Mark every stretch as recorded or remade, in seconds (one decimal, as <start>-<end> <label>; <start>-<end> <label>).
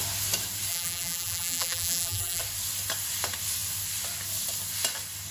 0.0-0.7 recorded; 0.7-2.4 remade; 2.4-5.3 recorded